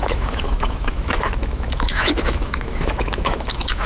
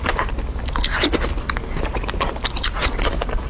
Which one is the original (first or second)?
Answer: second